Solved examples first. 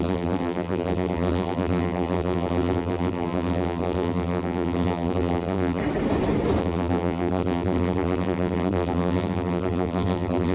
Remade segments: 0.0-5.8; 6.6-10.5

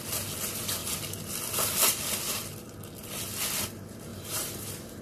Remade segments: 4.1-5.0